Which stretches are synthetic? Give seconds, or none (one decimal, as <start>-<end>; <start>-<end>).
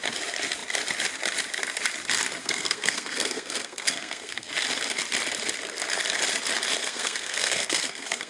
2.4-4.5; 6.8-8.3